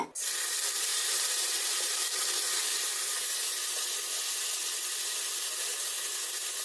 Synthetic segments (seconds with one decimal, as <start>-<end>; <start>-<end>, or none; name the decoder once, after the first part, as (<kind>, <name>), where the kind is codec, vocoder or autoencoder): 0.9-2.2 (vocoder, BigVGAN v2)